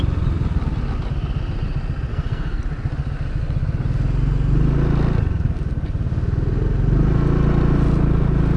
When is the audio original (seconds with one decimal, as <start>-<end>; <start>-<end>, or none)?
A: 0.0-2.1; 2.6-8.6